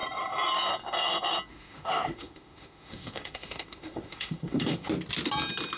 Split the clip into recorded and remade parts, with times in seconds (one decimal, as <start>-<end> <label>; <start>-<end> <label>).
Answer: 0.0-1.5 recorded; 1.5-4.9 remade; 4.9-5.8 recorded